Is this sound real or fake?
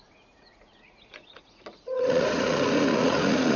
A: fake